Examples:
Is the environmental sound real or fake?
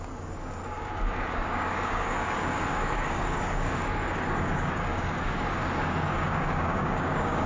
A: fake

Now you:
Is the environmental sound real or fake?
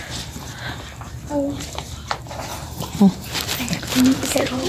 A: fake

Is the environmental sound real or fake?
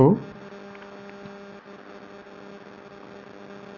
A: real